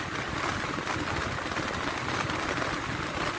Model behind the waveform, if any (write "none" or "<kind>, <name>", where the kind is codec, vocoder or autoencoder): none